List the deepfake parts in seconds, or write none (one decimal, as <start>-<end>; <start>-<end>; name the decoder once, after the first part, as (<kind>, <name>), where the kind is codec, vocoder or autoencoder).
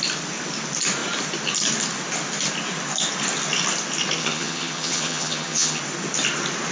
4.2-5.8 (vocoder, HiFi-GAN)